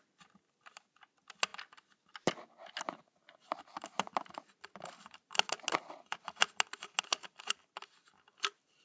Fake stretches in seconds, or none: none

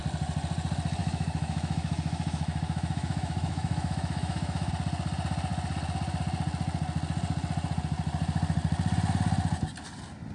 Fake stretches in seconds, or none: 1.0-4.7 (autoencoder, DAC-VAE)

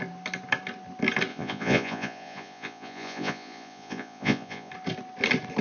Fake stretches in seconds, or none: 1.3-4.7 (vocoder, Vocos)

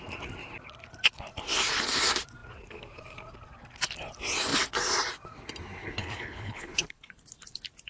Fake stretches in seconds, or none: 6.0-7.1 (codec, HILCodec)

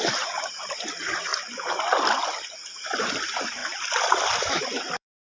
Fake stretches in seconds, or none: 0.0-1.3 (vocoder, BigVGAN v2); 2.8-5.2